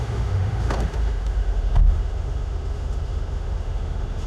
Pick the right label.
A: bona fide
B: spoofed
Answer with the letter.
B